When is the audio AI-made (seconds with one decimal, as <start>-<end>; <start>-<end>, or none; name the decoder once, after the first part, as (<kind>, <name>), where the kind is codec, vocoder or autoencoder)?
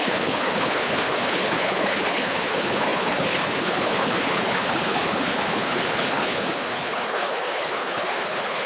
0.0-8.7 (codec, HILCodec)